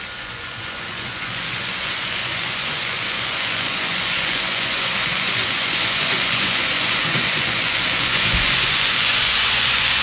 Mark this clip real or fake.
fake